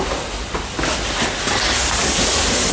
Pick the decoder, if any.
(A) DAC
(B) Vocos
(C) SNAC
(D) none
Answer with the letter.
D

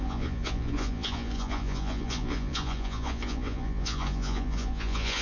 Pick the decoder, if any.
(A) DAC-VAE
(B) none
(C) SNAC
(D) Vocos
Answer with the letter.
D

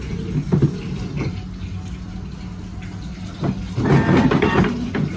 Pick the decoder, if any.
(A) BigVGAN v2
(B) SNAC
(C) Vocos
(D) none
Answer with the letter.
D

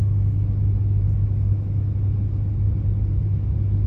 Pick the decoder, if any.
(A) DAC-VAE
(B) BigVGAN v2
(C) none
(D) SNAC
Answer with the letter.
C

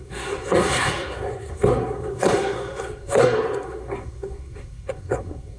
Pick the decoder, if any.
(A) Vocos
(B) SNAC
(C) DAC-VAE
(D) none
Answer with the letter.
B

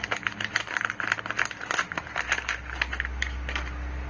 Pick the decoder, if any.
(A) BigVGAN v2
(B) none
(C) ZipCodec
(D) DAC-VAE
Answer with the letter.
B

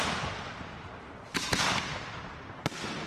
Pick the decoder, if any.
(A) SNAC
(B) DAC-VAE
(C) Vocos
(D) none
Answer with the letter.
D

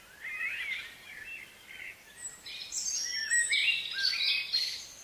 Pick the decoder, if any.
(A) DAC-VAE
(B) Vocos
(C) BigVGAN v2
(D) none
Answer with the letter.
D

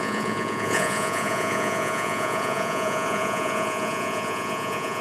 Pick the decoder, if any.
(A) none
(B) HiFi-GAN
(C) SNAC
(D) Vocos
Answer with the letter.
D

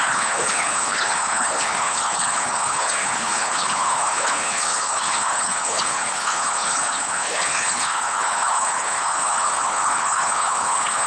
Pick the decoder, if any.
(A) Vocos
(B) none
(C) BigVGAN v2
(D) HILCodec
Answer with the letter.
D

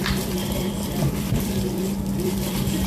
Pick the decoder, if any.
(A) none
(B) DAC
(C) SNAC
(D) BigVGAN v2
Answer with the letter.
D